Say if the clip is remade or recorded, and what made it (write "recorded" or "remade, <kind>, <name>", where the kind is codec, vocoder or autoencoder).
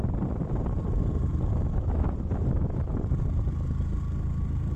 recorded